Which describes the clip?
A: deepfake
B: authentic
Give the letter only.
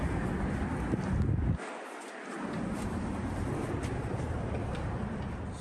B